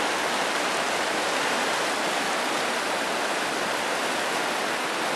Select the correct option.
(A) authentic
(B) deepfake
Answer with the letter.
A